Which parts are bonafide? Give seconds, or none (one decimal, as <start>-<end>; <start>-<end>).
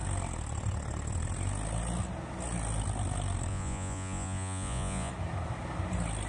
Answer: 0.0-3.5; 5.1-6.3